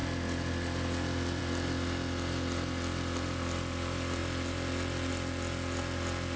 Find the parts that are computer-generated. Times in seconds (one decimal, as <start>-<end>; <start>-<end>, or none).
none